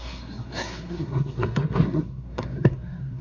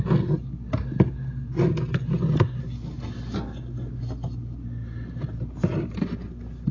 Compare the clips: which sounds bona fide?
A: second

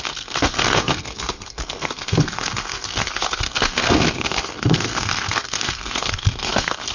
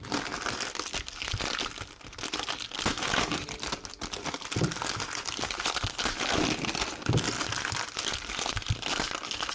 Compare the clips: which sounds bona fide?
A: second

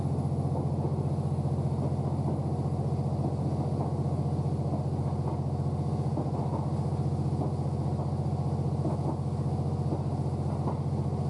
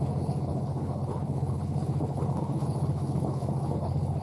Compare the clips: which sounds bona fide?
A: first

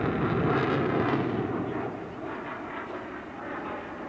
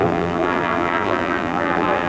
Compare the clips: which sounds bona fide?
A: first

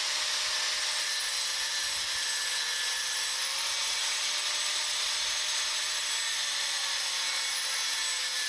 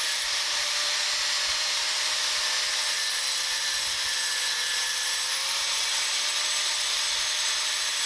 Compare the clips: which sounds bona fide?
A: first